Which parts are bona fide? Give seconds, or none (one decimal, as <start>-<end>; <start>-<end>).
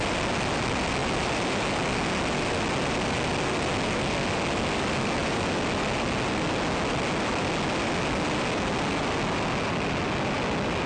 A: 0.0-10.9